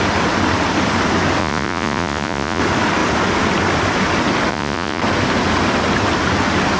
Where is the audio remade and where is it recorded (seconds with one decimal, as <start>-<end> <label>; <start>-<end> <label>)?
0.0-1.4 recorded; 1.4-2.6 remade; 2.6-4.5 recorded; 4.5-5.0 remade; 5.0-6.8 recorded